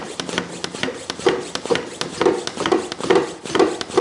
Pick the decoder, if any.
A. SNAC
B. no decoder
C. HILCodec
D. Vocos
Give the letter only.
B